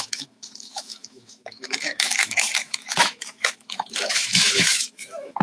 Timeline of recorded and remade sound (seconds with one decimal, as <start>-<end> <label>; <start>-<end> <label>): 0.0-5.4 remade